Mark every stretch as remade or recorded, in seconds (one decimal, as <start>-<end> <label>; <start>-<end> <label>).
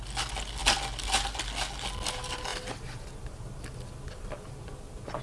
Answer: 0.0-5.2 recorded